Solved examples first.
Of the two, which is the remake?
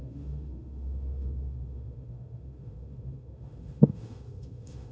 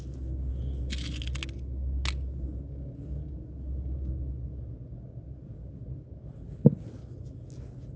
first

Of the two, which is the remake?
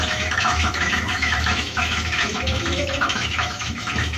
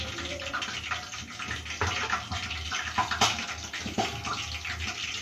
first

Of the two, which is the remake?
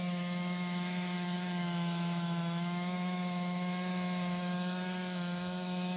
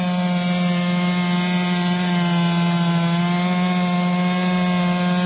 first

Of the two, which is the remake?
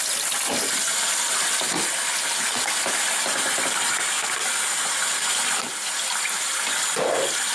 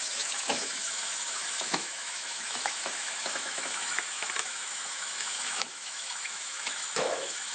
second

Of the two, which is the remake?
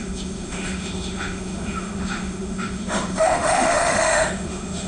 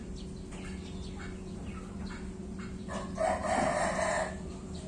first